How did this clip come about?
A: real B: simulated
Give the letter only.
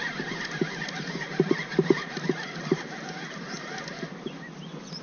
A